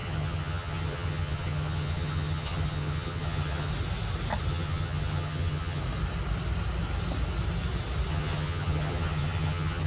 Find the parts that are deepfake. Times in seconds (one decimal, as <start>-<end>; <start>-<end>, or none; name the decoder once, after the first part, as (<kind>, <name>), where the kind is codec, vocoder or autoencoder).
0.0-3.7 (vocoder, HiFi-GAN); 4.5-5.8; 8.1-9.9

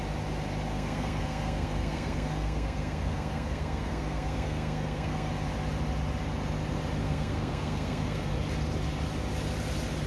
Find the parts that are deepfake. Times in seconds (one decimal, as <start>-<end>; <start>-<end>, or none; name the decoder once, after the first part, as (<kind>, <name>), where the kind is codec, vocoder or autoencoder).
0.7-5.3 (codec, SNAC); 7.0-8.3

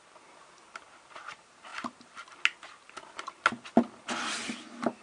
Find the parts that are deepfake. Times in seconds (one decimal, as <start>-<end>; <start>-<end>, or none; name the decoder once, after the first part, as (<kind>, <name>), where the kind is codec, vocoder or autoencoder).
none

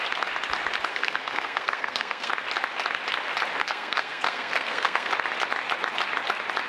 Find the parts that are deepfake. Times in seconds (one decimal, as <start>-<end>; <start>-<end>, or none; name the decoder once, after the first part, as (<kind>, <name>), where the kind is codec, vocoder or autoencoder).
0.9-2.3 (codec, SNAC); 3.6-5.1

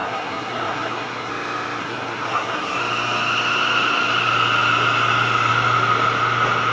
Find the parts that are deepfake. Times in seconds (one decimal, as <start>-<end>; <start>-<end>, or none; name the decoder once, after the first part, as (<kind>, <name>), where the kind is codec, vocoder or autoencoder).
0.0-1.3 (codec, SNAC); 1.8-2.8

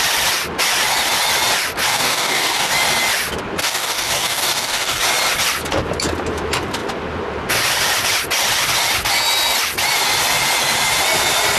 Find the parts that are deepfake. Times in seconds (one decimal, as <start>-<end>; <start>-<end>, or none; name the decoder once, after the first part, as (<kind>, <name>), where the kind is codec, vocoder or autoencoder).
1.9-2.7 (codec, DAC); 3.6-5.0